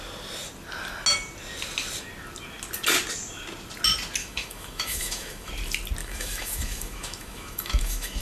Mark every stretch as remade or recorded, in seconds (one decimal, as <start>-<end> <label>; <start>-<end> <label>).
0.0-4.2 recorded; 4.2-5.5 remade; 5.5-6.0 recorded; 6.0-8.2 remade